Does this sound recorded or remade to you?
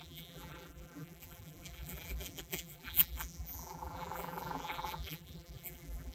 remade